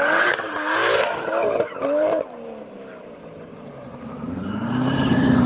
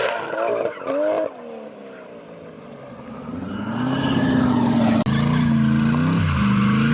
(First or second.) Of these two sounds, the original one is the second